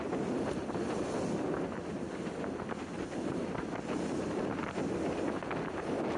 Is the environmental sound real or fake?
real